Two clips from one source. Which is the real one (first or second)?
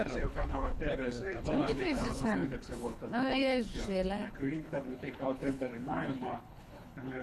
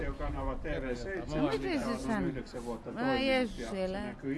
second